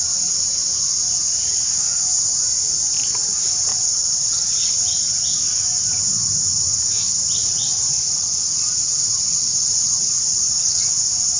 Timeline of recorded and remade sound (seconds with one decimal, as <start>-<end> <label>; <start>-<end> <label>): 0.0-3.7 recorded; 3.7-4.7 remade; 4.7-7.4 recorded; 7.4-11.0 remade; 11.0-11.4 recorded